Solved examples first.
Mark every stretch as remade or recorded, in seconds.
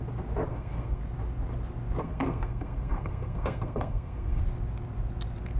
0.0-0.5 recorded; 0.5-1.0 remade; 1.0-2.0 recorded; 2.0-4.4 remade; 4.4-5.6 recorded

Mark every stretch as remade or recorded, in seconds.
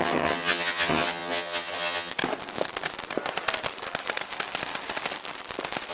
0.0-2.1 remade; 2.1-5.9 recorded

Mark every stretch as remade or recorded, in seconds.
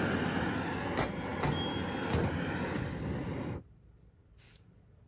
0.0-5.1 recorded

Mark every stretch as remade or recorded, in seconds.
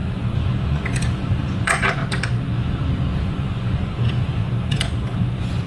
0.0-2.0 remade; 2.0-3.2 recorded; 3.2-5.7 remade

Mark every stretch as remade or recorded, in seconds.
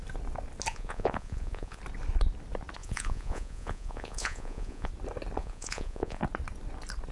0.0-0.7 recorded; 0.7-1.8 remade; 1.8-2.8 recorded; 2.8-4.9 remade; 4.9-5.4 recorded; 5.4-6.2 remade; 6.2-7.1 recorded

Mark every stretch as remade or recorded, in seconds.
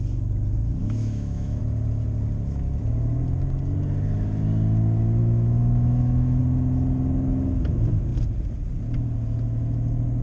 0.0-0.8 recorded; 0.8-1.6 remade; 1.6-5.2 recorded; 5.2-6.4 remade; 6.4-10.2 recorded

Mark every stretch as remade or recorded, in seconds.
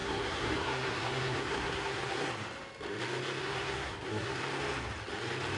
0.0-2.3 remade; 2.3-3.4 recorded; 3.4-4.4 remade; 4.4-5.6 recorded